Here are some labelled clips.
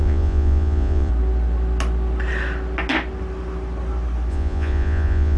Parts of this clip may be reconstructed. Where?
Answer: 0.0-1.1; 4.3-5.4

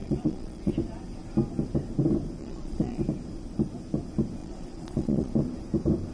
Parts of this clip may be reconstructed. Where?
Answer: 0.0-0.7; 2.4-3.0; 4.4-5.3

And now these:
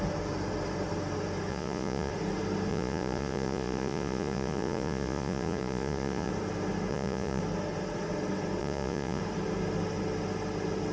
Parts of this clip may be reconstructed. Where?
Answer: 1.5-2.1; 2.7-6.3; 6.9-7.4; 8.6-9.2

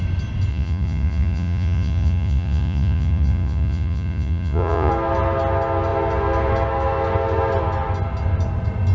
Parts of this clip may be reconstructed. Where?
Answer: 0.5-4.9

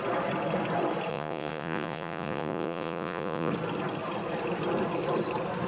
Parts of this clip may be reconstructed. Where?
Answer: 1.1-3.5

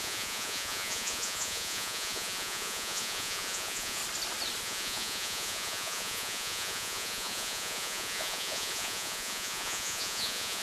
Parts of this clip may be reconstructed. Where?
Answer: 0.0-4.0; 4.6-10.6